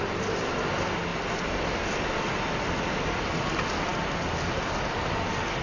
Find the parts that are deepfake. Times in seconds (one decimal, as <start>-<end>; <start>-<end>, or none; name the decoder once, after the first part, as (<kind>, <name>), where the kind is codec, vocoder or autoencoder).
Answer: none